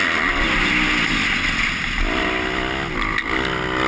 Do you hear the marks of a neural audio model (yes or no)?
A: no